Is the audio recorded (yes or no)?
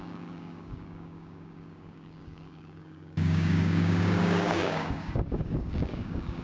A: no